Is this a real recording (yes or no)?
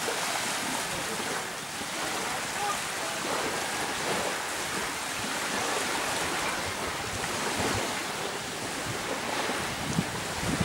yes